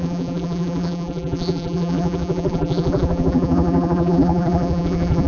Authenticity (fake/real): fake